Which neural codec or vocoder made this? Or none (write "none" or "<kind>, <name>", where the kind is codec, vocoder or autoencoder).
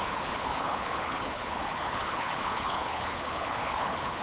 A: codec, HILCodec